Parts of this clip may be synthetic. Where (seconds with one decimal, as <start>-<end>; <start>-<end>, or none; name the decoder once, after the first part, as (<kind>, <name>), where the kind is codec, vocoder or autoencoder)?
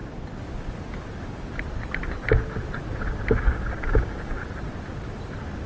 3.4-4.4 (codec, DAC)